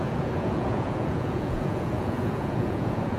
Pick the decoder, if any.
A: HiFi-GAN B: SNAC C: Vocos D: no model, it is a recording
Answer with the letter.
C